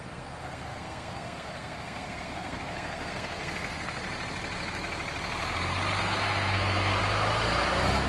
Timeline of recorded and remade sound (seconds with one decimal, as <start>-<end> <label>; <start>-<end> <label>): 0.0-4.0 remade; 4.0-6.0 recorded; 6.0-7.0 remade; 7.0-8.1 recorded